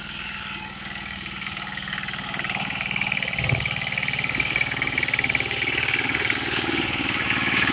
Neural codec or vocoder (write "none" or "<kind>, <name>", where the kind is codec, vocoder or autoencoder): codec, DAC